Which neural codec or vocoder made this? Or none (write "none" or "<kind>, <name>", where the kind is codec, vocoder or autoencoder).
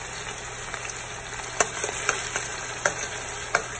none